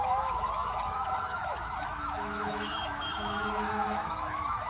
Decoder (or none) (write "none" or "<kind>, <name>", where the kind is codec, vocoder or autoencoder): autoencoder, DAC-VAE